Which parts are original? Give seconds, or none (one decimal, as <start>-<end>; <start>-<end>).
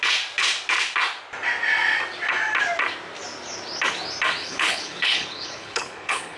0.0-4.4